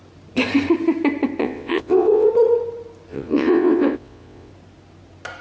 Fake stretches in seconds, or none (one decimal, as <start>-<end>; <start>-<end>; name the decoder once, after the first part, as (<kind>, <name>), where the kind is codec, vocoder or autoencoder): 1.4-2.3 (vocoder, WaveNeXt); 3.1-4.5